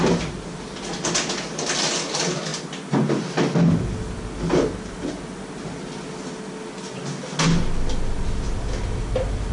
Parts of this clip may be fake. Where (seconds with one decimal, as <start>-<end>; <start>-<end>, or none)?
none